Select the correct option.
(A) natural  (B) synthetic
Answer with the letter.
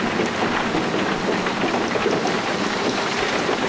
B